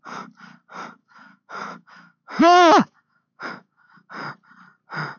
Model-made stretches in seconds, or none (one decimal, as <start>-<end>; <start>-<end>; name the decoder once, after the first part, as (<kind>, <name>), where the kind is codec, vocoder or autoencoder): 1.0-4.1 (autoencoder, DAC-VAE)